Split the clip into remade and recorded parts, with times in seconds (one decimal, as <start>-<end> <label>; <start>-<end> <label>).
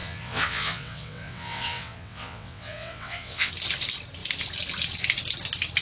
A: 0.0-3.5 remade; 3.5-5.8 recorded